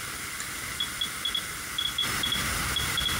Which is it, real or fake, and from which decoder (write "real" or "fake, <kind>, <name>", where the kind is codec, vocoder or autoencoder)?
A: real